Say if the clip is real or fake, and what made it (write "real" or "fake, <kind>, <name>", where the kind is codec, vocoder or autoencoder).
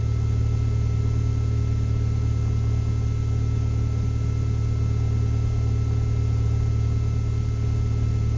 real